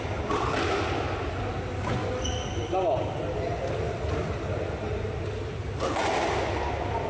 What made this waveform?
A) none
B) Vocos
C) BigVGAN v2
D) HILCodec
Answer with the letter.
A